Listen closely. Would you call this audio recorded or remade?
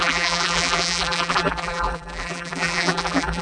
remade